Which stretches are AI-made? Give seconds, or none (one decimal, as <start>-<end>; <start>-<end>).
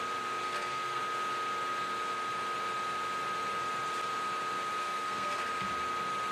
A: 0.4-1.0; 4.8-5.5